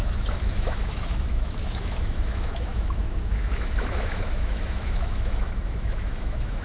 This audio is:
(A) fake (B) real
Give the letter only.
A